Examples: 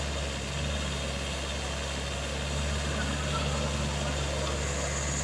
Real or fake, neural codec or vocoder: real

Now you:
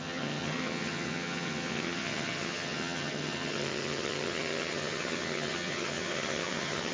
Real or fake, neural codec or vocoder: fake, vocoder, HiFi-GAN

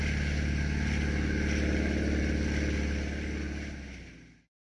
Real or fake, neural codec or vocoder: real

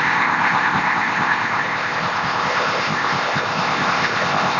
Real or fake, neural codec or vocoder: fake, codec, ZipCodec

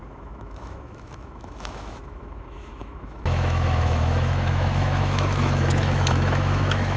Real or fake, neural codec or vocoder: fake, autoencoder, DAC-VAE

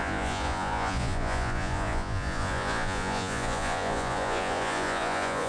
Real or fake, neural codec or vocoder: fake, vocoder, Vocos